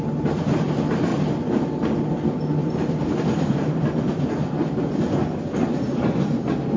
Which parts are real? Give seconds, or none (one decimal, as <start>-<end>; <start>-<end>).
0.0-2.6